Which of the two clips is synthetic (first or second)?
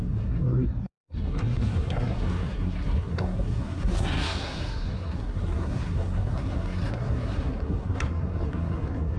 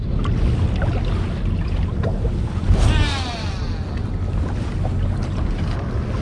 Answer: first